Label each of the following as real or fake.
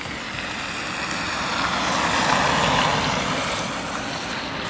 real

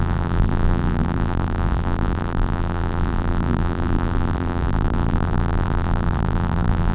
fake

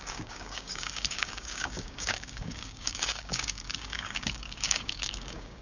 fake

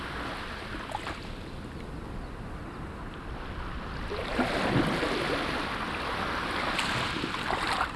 real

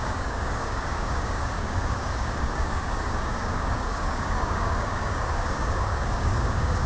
fake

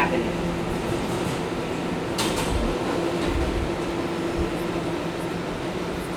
real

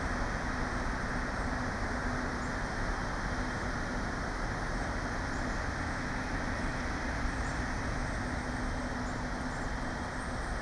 real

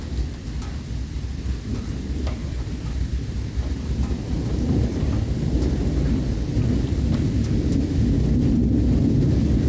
real